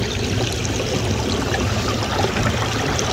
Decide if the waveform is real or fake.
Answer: real